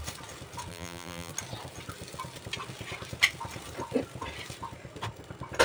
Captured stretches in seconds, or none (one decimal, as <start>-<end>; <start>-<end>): 0.0-0.7; 1.3-5.6